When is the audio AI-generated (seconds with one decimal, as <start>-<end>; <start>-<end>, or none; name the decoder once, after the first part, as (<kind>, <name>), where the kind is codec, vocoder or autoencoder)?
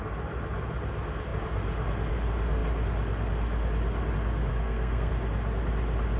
4.5-5.1 (codec, SNAC)